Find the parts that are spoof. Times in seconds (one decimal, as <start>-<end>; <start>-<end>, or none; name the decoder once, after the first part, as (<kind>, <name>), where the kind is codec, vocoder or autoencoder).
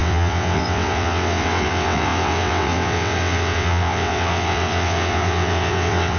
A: 0.0-6.2 (vocoder, WaveNeXt)